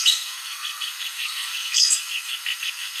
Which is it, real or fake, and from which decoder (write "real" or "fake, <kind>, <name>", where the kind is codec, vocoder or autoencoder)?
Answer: fake, codec, SNAC